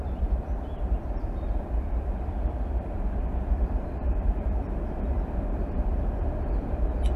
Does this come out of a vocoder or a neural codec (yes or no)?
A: yes